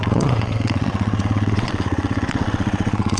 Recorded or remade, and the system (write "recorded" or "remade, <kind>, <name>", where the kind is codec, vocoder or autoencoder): remade, vocoder, WaveNeXt